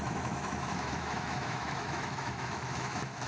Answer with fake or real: fake